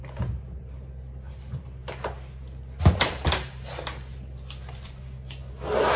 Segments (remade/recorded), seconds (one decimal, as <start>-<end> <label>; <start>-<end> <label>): 0.0-6.0 recorded